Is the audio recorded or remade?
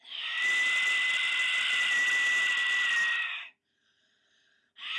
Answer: recorded